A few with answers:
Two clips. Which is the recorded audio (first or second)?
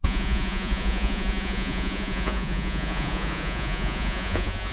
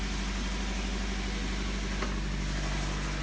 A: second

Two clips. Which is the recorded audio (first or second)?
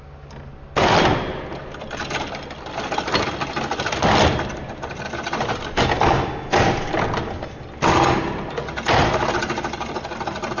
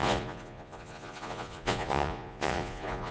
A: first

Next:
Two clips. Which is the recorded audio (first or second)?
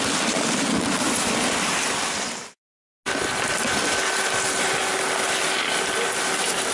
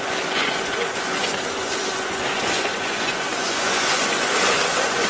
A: first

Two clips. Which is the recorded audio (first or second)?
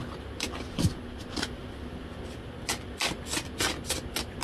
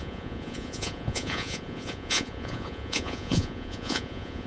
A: first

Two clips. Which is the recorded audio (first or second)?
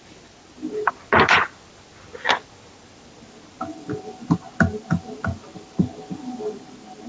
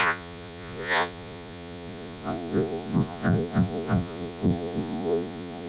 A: first